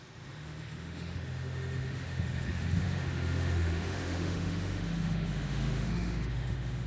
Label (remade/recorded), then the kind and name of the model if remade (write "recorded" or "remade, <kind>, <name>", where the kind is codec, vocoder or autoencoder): remade, autoencoder, DAC-VAE